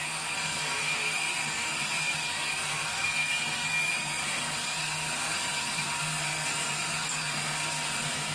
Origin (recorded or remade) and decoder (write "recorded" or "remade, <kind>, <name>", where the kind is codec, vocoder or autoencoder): remade, codec, SNAC